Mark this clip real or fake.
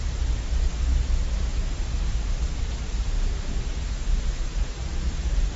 fake